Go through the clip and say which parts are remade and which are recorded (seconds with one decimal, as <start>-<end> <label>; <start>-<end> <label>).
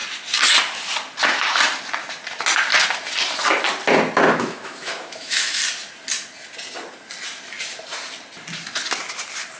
0.0-4.3 recorded; 4.3-5.6 remade; 5.6-9.6 recorded